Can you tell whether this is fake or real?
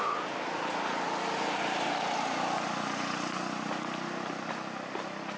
real